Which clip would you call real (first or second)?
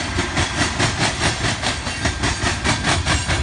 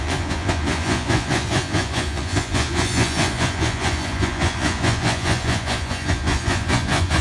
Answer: first